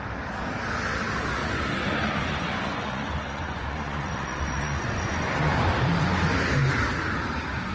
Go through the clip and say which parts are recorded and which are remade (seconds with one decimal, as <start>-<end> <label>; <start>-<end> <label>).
0.0-1.4 recorded; 1.4-5.7 remade; 5.7-7.7 recorded

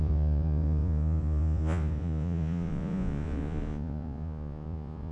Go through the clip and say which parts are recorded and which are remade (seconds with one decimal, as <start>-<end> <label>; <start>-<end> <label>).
0.0-5.1 remade

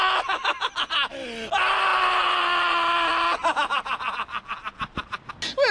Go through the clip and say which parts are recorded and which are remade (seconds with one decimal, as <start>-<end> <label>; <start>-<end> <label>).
0.0-5.7 recorded

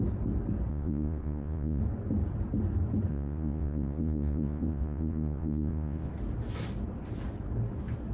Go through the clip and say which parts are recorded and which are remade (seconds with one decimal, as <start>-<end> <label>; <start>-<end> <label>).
0.0-0.7 recorded; 0.7-1.8 remade; 1.8-3.1 recorded; 3.1-6.1 remade; 6.1-8.1 recorded